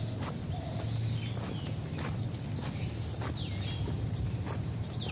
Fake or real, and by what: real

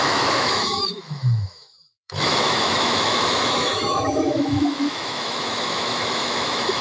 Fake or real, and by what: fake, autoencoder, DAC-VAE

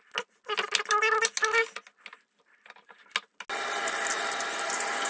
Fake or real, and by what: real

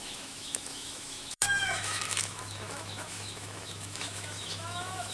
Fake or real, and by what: fake, autoencoder, DAC-VAE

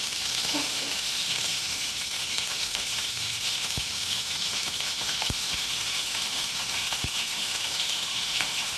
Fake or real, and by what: fake, autoencoder, DAC-VAE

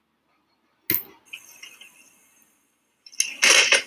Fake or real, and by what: real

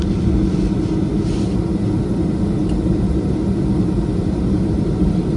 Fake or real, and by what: real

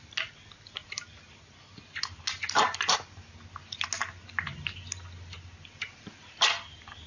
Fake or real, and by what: real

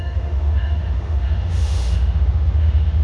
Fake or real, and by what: fake, autoencoder, DAC-VAE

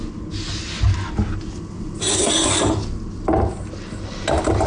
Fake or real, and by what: real